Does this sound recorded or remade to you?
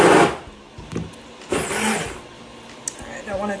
recorded